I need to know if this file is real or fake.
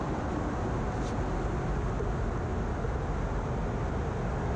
real